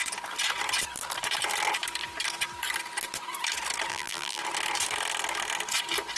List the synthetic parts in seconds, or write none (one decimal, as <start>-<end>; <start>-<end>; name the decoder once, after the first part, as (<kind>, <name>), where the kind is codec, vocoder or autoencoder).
3.9-4.4 (vocoder, BigVGAN v2)

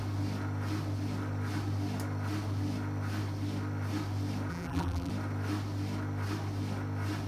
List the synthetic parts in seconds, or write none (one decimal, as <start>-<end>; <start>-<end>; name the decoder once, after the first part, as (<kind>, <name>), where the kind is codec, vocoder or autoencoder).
4.5-5.1 (vocoder, BigVGAN v2)

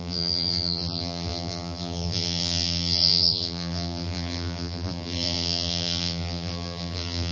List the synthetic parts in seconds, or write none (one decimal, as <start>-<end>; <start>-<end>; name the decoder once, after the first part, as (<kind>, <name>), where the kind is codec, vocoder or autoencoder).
0.0-7.3 (vocoder, BigVGAN v2)

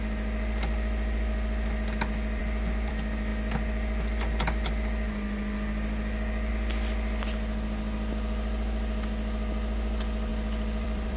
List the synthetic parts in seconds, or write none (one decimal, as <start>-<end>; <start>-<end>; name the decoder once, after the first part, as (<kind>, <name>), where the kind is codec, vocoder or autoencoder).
10.3-11.2 (vocoder, BigVGAN v2)

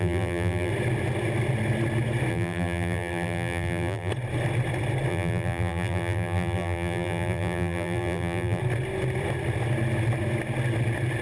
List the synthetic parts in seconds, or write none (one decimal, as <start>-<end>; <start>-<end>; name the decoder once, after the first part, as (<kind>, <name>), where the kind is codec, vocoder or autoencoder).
0.0-0.7 (vocoder, BigVGAN v2); 2.3-4.1; 5.1-8.6

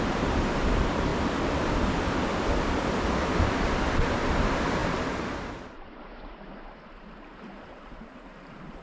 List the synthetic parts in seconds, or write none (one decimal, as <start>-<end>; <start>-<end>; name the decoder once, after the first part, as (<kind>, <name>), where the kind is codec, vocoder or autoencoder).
0.0-1.1 (vocoder, BigVGAN v2); 3.3-8.8

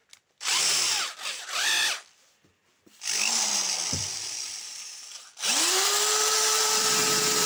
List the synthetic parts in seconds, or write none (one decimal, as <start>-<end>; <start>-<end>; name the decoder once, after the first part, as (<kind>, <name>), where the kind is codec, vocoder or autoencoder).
1.4-7.5 (vocoder, BigVGAN v2)

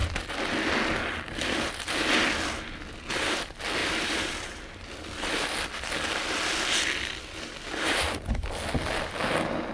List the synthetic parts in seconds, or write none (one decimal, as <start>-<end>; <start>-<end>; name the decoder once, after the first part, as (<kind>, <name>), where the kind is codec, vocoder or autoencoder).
3.8-4.8 (vocoder, BigVGAN v2)